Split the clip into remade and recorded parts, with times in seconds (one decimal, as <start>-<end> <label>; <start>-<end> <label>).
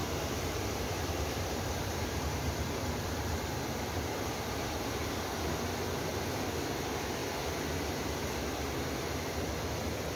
0.0-5.1 remade; 5.1-7.2 recorded; 7.2-8.2 remade; 8.2-10.1 recorded